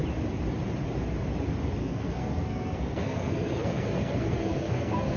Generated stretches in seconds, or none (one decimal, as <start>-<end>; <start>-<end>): 1.8-5.2